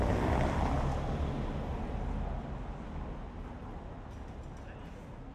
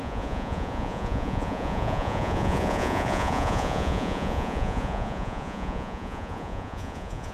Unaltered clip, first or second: first